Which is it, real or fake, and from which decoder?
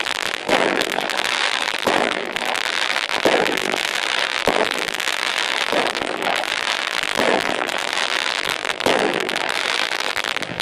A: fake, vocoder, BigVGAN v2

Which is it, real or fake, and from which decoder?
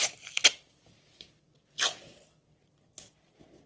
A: real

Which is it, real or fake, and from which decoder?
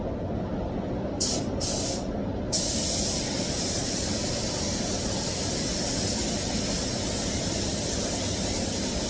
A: real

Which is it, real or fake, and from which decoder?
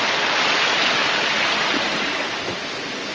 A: real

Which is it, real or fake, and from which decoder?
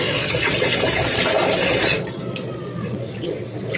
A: fake, vocoder, Vocos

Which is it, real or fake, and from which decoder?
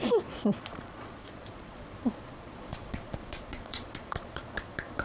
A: fake, vocoder, Vocos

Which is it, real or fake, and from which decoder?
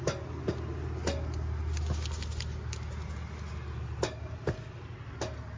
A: real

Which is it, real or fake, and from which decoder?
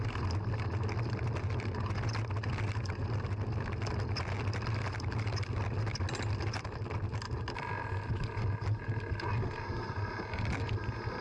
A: real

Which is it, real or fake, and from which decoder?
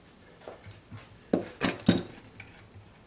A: real